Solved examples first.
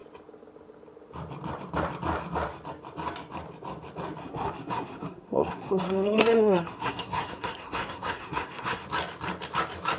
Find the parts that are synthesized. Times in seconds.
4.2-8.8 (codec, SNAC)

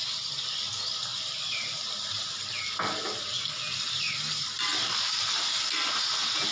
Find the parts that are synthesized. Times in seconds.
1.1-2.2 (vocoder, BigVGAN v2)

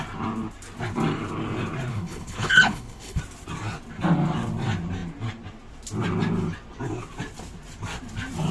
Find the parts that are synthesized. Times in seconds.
1.9-3.2 (codec, HILCodec)